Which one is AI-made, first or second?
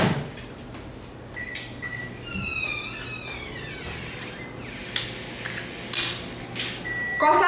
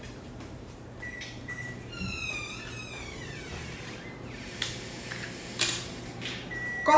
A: second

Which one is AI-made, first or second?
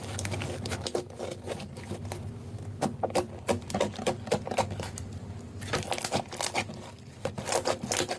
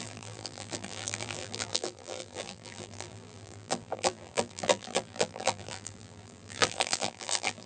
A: second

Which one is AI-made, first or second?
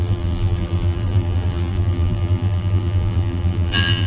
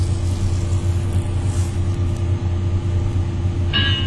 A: first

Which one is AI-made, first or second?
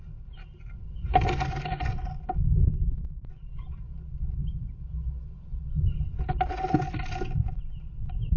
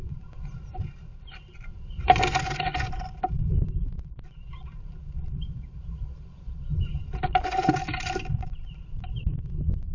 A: second